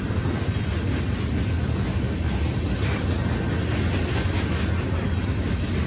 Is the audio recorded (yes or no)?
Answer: yes